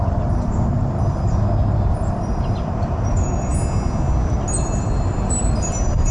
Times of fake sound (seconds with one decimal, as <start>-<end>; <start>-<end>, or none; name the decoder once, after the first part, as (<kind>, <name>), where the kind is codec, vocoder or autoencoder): 0.0-3.5 (vocoder, BigVGAN v2); 4.5-6.1